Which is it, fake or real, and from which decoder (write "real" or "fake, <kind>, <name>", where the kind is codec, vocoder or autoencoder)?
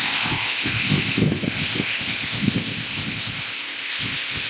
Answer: fake, codec, ZipCodec